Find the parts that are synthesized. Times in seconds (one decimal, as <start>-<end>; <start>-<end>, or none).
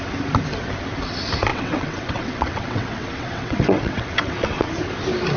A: 1.5-4.7